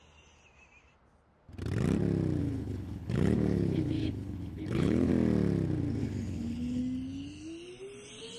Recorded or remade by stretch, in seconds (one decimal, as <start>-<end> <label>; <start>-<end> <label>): 0.0-2.4 recorded; 2.4-5.1 remade; 5.1-6.0 recorded; 6.0-6.8 remade; 6.8-8.4 recorded